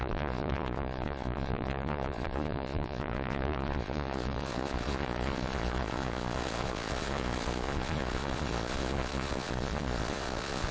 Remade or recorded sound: remade